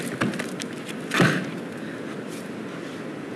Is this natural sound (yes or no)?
yes